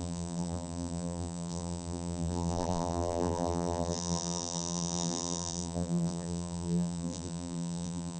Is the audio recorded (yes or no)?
no